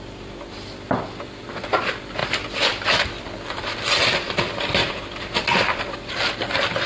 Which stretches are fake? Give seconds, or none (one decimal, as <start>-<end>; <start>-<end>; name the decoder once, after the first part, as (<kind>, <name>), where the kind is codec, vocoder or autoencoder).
none